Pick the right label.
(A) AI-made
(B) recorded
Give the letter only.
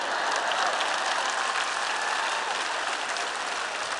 B